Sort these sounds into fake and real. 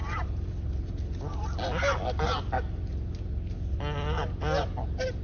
real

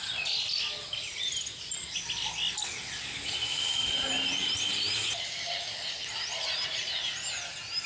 real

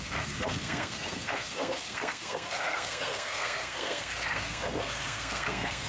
fake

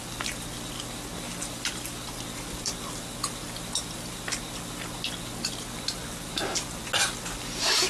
real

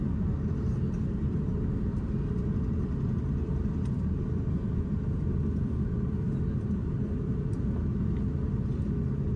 real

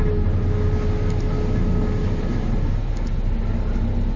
real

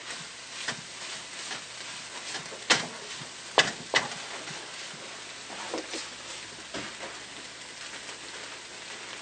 real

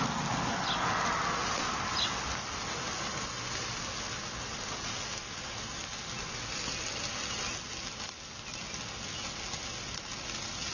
real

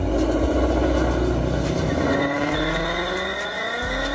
real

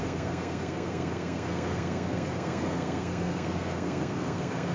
fake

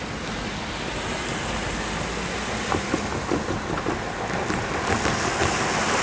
real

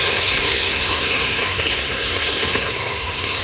fake